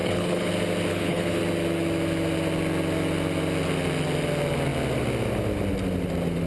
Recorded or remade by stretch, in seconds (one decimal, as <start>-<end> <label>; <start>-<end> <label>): 0.0-0.5 remade; 0.5-0.9 recorded; 0.9-1.4 remade; 1.4-6.5 recorded